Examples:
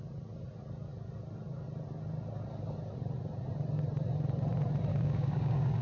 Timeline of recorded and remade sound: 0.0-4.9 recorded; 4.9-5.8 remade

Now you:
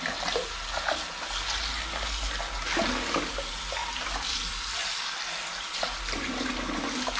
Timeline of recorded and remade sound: 0.0-3.8 recorded; 3.8-6.0 remade; 6.0-7.2 recorded

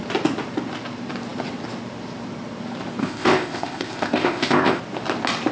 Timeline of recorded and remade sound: 0.0-3.0 recorded; 3.0-4.8 remade; 4.8-5.5 recorded